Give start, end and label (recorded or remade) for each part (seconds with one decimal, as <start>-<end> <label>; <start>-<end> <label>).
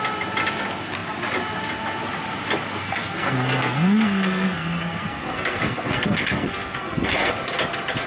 0.0-2.7 recorded; 2.7-7.3 remade; 7.3-8.1 recorded